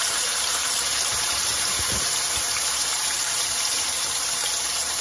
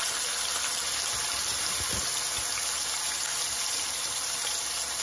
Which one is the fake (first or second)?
first